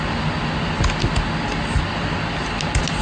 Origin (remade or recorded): recorded